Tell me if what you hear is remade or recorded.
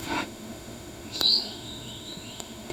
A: remade